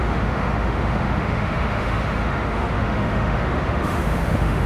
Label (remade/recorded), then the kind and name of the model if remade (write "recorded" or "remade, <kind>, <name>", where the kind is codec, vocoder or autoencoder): remade, autoencoder, DAC-VAE